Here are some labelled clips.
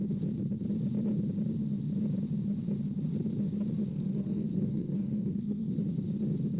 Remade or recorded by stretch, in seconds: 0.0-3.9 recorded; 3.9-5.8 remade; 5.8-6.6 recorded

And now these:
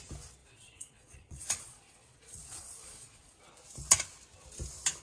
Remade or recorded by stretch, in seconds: 0.0-0.4 recorded; 0.4-3.4 remade; 3.4-5.0 recorded